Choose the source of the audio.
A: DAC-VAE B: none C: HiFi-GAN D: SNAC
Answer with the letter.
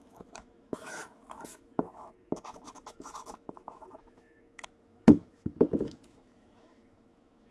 A